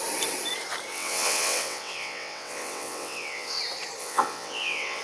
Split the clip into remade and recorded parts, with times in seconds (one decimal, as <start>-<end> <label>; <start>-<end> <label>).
0.0-0.9 recorded; 0.9-3.6 remade; 3.6-4.0 recorded; 4.0-5.0 remade